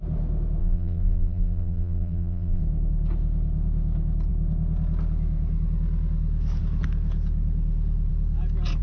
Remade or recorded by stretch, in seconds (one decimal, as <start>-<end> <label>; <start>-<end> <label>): 0.0-0.6 recorded; 0.6-2.6 remade; 2.6-8.8 recorded